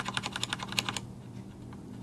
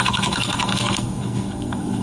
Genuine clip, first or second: first